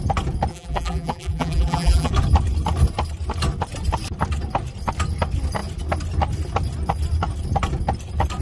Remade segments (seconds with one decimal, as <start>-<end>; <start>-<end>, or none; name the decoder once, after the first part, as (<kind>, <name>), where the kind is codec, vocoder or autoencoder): 0.5-2.1 (vocoder, BigVGAN v2)